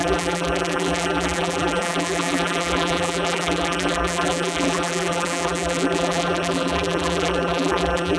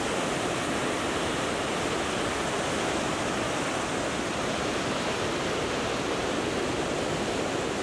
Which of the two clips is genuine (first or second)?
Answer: second